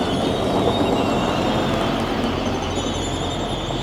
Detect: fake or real real